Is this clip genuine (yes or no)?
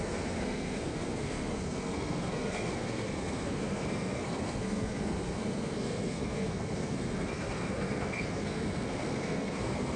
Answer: no